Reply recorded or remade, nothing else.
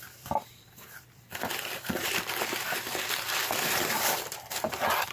remade